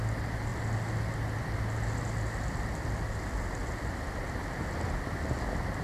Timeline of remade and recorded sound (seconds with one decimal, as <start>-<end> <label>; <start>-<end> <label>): 0.0-5.8 recorded